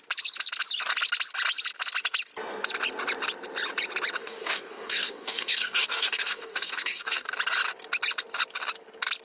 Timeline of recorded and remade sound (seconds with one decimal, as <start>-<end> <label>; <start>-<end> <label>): 0.0-4.2 recorded; 4.2-7.3 remade; 7.3-9.2 recorded